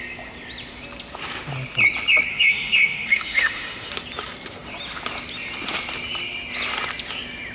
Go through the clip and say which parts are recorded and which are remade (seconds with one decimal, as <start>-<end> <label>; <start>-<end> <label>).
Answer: 0.0-2.3 recorded; 2.3-3.9 remade; 3.9-7.5 recorded